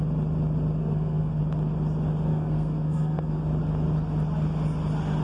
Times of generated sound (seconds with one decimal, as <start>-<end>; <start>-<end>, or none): 0.8-1.4; 2.3-3.4